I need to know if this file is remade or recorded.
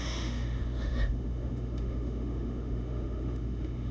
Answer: remade